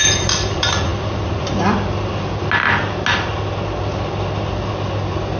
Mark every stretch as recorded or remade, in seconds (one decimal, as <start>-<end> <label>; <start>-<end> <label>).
0.0-5.4 recorded